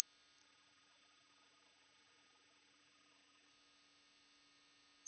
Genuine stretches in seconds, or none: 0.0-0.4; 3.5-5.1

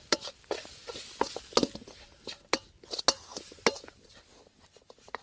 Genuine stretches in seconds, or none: 0.0-5.2